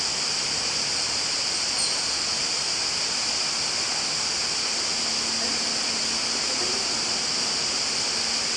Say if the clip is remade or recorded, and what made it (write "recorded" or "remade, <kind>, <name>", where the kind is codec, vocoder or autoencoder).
recorded